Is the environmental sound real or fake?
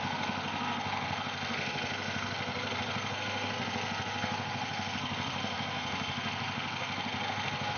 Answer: fake